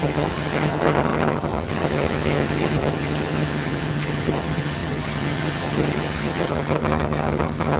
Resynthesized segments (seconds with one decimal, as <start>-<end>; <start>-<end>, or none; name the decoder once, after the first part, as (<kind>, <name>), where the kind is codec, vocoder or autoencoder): 0.0-7.8 (vocoder, HiFi-GAN)

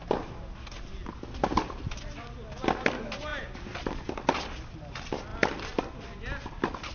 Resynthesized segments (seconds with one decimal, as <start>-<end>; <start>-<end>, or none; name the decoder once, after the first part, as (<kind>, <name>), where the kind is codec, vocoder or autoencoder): 3.3-4.3 (vocoder, BigVGAN v2); 5.3-5.8

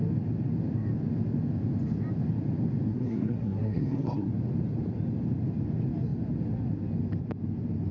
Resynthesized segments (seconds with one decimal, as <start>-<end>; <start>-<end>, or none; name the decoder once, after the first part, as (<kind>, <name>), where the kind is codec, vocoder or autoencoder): 2.9-4.3 (codec, SNAC)

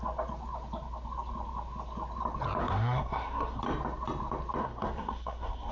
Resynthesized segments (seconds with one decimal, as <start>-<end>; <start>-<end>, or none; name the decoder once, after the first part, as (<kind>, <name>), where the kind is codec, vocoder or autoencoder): 2.6-3.6 (codec, SNAC); 4.6-5.7

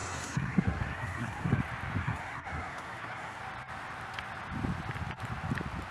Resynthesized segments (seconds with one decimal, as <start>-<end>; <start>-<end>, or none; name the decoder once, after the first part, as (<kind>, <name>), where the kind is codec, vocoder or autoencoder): 0.0-1.6 (codec, SNAC); 2.0-3.4

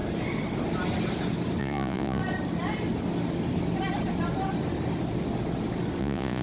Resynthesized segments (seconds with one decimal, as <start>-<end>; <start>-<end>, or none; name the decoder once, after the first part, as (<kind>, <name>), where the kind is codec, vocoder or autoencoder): 1.6-2.2 (vocoder, Vocos); 6.0-6.4

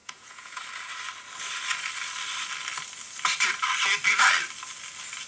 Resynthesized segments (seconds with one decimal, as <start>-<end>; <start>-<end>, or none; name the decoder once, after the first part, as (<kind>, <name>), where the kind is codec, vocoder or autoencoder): 0.0-0.6 (vocoder, Vocos)

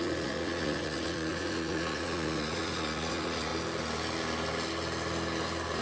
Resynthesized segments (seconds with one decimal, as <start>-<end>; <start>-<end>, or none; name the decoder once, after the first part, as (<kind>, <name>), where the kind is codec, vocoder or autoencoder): 0.0-3.5 (vocoder, Vocos)